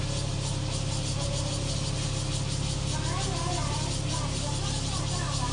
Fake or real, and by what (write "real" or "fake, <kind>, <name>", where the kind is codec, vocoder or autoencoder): real